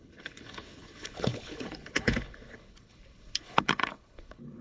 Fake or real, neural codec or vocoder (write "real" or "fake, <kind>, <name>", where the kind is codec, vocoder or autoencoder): fake, codec, HILCodec